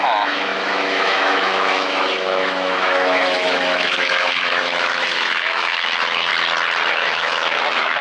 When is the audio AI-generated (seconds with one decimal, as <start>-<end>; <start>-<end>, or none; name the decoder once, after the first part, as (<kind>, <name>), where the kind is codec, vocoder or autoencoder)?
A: 0.0-6.3 (autoencoder, DAC-VAE); 6.9-8.0